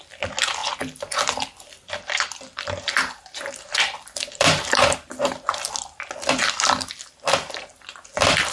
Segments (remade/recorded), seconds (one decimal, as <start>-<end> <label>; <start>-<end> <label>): 0.0-0.6 recorded; 0.6-5.7 remade; 5.7-8.5 recorded